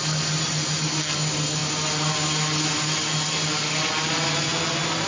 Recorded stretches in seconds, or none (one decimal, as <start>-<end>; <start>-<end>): 0.0-5.1